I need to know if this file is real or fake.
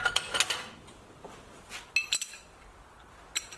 real